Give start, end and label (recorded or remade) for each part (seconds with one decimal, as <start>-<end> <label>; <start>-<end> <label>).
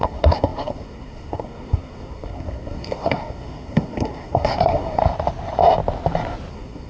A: 0.0-5.0 remade; 5.0-6.5 recorded; 6.5-6.9 remade